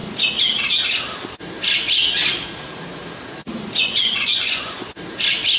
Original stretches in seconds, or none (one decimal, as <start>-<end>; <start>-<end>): 0.0-3.8; 4.9-5.6